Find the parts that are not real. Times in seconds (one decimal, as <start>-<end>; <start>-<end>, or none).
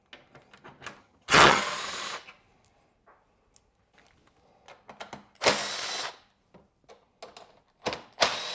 1.0-1.6